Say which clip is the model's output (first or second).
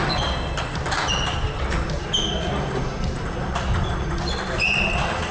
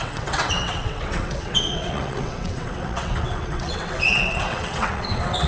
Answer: second